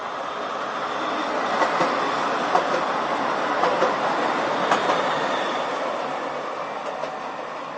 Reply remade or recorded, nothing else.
recorded